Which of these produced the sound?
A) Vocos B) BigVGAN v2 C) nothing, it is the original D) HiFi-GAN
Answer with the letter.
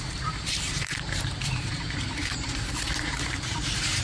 B